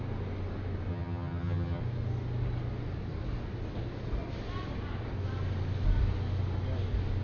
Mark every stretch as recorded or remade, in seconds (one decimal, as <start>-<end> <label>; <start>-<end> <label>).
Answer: 0.0-0.9 recorded; 0.9-1.8 remade; 1.8-7.2 recorded